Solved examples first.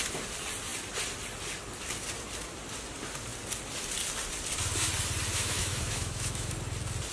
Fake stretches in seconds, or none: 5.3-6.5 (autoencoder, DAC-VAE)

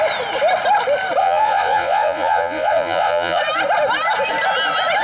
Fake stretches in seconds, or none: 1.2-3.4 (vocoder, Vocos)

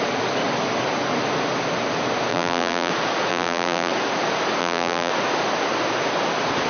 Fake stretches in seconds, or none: 2.3-2.9 (vocoder, BigVGAN v2); 3.3-3.9; 4.6-5.1

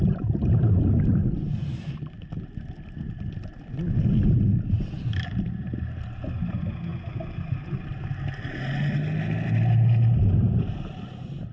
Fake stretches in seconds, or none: none

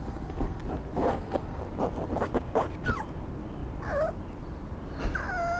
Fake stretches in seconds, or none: 0.0-0.6 (codec, SNAC); 1.0-1.6

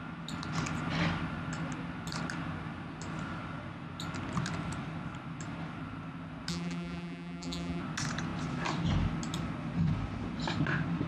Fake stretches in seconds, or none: 6.5-7.8 (vocoder, BigVGAN v2)

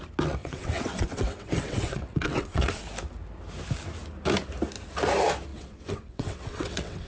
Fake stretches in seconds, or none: 0.4-2.8 (vocoder, WaveNeXt); 5.5-7.1